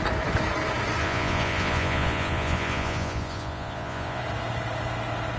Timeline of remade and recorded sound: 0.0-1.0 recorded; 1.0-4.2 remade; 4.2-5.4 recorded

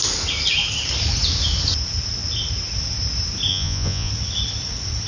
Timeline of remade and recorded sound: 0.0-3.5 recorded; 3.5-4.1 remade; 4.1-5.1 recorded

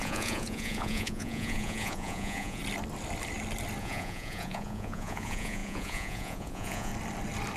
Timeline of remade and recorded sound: 0.0-2.6 remade; 2.6-3.8 recorded; 3.8-6.9 remade; 6.9-7.6 recorded